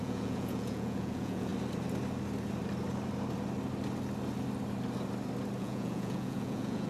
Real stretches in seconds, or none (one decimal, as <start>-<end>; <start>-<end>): 1.5-5.6

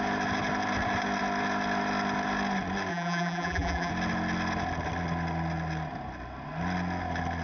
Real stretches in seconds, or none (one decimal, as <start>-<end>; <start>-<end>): 0.0-2.9; 3.9-7.4

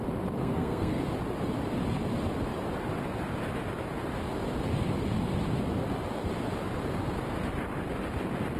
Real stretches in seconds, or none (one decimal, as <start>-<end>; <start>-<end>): 0.0-0.4; 1.0-8.6